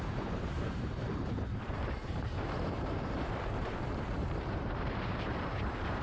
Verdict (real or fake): fake